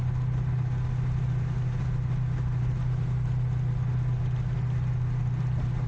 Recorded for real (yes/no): yes